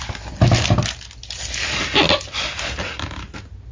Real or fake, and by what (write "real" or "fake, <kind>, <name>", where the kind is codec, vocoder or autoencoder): real